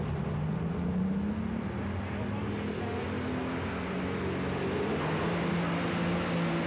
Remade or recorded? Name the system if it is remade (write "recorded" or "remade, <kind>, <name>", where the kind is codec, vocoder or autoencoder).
recorded